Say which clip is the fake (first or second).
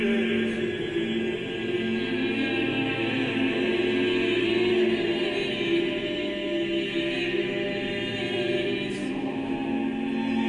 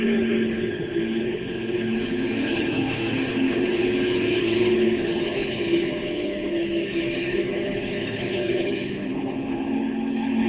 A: second